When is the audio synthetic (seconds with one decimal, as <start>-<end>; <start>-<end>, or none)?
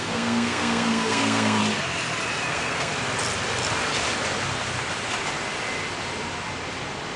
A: 0.0-1.6; 2.5-2.9